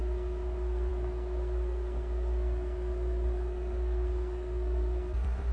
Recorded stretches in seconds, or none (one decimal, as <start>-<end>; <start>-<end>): none